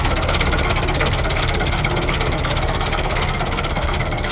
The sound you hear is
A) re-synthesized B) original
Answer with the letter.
A